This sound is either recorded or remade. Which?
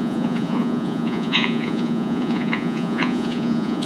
remade